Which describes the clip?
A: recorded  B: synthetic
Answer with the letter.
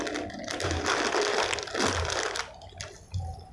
A